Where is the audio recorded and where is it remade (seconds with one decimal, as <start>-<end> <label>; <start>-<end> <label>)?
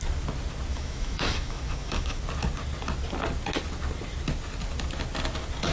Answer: 0.0-0.7 recorded; 0.7-2.2 remade; 2.2-5.7 recorded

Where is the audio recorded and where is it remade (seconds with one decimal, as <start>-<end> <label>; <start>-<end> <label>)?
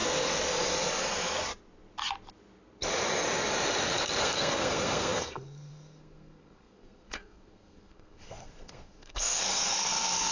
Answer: 0.0-4.2 recorded; 4.2-10.3 remade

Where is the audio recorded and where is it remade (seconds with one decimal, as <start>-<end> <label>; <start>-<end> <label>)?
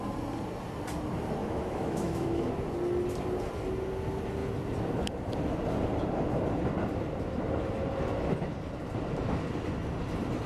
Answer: 0.0-1.4 recorded; 1.4-2.5 remade; 2.5-10.5 recorded